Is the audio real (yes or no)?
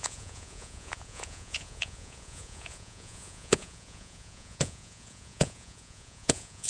no